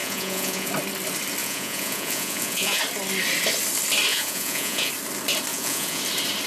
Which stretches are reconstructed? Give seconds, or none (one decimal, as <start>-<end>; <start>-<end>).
0.0-0.7; 1.4-2.8; 4.1-4.9; 5.5-6.0

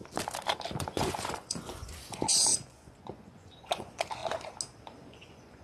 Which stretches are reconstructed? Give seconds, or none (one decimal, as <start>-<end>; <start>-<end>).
0.8-4.2; 5.0-5.6

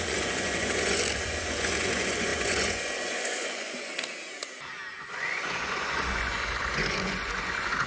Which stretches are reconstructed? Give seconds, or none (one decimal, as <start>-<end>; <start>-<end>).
0.0-3.9; 5.1-7.9